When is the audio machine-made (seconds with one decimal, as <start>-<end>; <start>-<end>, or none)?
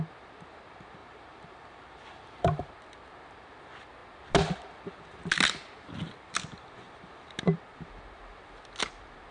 1.0-2.7